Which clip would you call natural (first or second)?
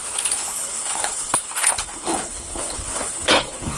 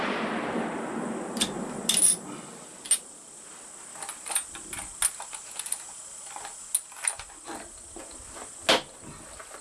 second